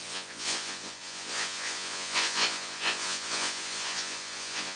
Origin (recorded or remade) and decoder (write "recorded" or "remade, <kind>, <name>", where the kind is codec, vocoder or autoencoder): remade, vocoder, Vocos